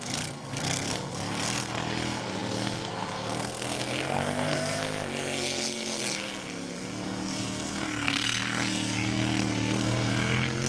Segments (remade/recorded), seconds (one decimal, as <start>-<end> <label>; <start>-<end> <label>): 0.0-10.7 remade